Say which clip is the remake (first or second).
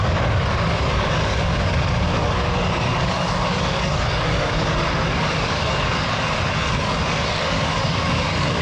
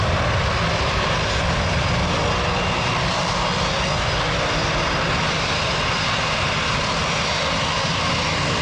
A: first